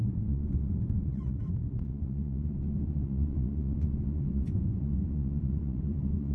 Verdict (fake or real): fake